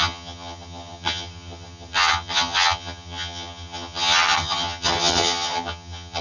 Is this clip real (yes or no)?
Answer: no